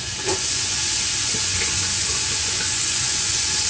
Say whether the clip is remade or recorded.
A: remade